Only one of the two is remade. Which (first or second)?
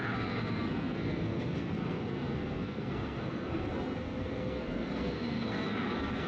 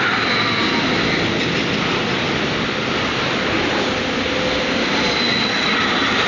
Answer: first